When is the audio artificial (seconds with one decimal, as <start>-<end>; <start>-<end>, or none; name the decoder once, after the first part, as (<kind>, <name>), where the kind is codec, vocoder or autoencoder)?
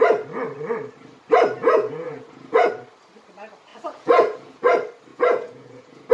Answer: 1.6-2.7 (vocoder, Vocos); 3.7-4.6; 5.1-6.1